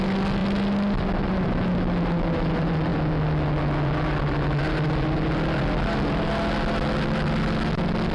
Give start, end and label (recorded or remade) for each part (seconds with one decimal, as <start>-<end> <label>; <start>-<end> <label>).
0.0-8.1 recorded